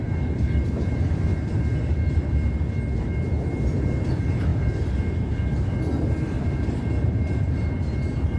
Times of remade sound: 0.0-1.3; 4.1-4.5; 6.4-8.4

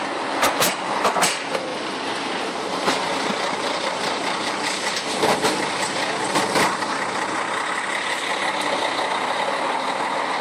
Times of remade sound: 1.7-5.4

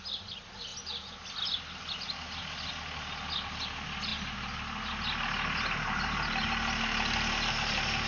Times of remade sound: none

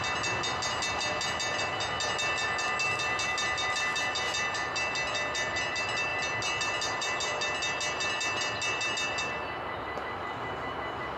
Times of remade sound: none

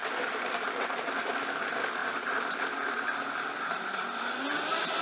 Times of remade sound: 0.0-1.5

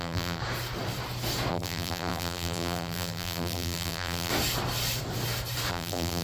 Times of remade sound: 0.0-0.4; 1.5-4.3; 5.7-6.2

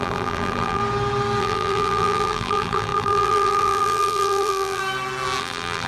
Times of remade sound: 0.0-0.8; 1.4-4.8; 5.4-5.9

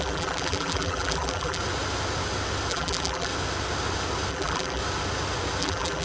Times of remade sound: 0.0-1.6; 2.7-3.3; 4.3-4.8; 5.6-6.0